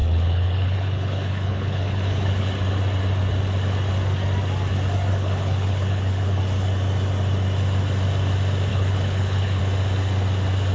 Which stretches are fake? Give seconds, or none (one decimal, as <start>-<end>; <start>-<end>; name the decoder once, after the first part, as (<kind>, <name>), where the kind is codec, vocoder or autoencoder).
0.0-2.5 (codec, HILCodec); 5.1-6.4; 8.7-9.6